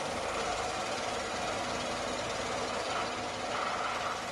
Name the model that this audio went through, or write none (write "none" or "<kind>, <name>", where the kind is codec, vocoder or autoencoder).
none